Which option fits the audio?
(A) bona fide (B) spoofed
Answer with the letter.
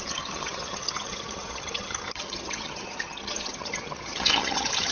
B